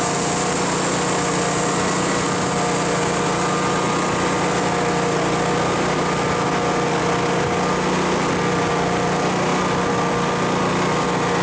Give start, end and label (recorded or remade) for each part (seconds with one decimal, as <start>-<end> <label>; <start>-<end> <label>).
0.0-11.4 recorded

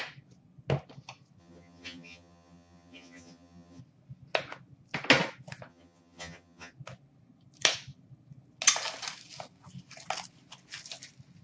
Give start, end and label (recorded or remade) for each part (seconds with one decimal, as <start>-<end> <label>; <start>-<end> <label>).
0.0-1.4 recorded; 1.4-3.8 remade; 3.8-5.7 recorded; 5.7-6.7 remade; 6.7-11.4 recorded